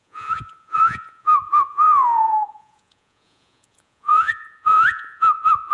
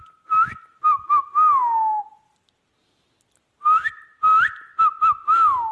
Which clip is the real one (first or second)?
second